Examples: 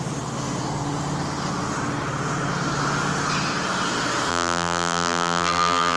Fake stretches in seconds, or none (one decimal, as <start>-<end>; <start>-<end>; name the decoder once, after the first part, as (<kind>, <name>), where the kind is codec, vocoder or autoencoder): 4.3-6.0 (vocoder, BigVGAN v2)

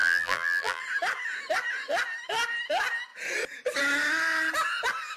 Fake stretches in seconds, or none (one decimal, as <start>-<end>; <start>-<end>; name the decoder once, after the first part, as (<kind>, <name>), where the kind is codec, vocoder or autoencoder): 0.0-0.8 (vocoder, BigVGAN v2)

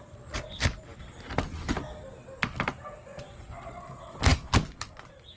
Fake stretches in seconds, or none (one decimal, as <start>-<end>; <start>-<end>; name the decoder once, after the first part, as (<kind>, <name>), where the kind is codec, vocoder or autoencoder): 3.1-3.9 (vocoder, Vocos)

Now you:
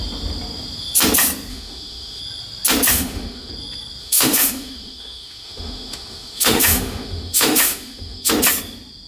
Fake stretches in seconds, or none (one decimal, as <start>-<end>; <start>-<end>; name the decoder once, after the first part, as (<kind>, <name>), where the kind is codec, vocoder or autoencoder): 1.5-2.2 (autoencoder, DAC-VAE); 2.9-3.5; 4.0-8.3

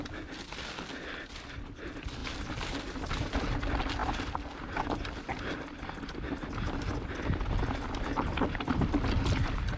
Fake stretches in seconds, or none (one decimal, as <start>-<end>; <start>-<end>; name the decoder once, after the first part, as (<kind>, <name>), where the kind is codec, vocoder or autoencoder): none

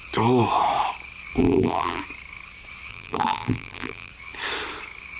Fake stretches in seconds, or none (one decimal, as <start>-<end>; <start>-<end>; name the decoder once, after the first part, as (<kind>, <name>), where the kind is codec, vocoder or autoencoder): 1.4-2.0 (vocoder, BigVGAN v2); 2.9-4.1

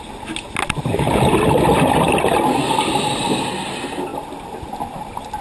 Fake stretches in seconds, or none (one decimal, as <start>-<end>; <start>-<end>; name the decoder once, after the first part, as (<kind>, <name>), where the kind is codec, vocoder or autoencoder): none